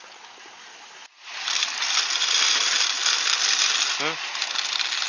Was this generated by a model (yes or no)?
no